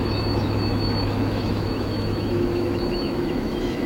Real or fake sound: fake